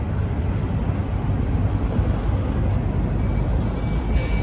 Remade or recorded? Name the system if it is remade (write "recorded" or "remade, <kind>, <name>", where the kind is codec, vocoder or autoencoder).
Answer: recorded